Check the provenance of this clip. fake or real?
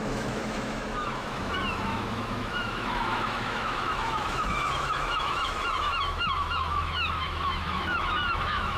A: fake